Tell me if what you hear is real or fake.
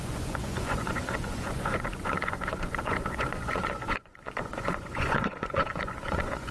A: fake